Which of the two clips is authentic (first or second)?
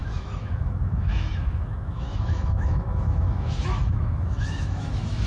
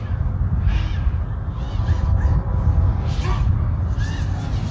second